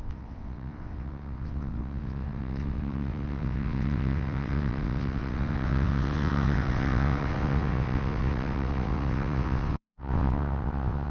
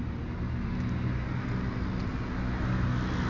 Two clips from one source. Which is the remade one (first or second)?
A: first